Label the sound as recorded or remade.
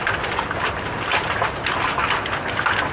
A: recorded